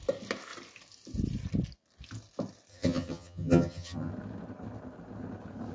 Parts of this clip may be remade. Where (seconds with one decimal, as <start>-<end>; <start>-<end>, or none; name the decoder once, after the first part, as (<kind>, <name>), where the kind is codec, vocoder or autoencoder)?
2.7-4.1 (vocoder, HiFi-GAN)